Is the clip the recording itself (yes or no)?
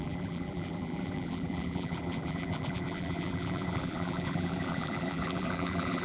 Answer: no